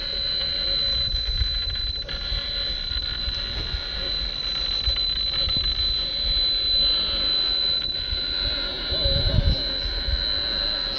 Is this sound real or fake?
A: real